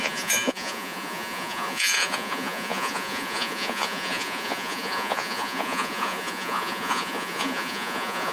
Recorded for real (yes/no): no